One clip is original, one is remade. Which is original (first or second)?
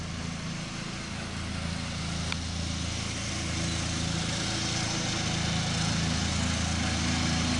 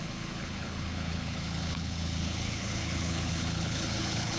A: first